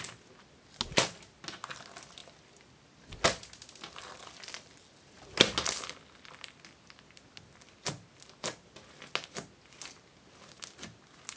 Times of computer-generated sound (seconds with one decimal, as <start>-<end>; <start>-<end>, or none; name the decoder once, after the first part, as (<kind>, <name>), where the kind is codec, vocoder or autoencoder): none